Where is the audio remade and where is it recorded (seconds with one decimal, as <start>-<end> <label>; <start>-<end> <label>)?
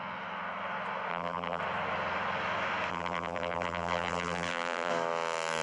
0.0-1.1 recorded; 1.1-1.6 remade; 1.6-2.9 recorded; 2.9-4.9 remade; 4.9-5.6 recorded